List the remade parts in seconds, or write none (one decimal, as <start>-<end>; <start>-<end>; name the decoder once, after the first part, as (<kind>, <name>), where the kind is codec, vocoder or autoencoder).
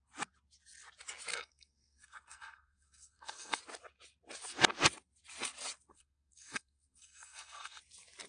1.3-3.6 (codec, SNAC); 5.9-7.8